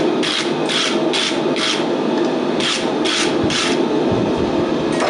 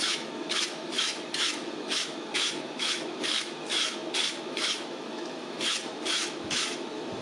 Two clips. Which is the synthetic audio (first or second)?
second